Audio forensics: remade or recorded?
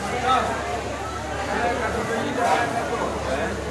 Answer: recorded